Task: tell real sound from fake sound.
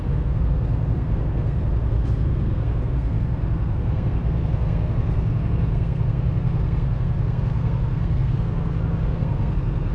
fake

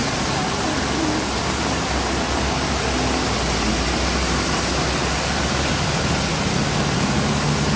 real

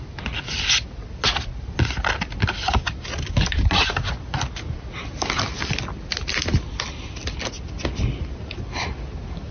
real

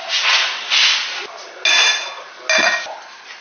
real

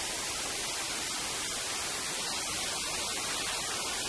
real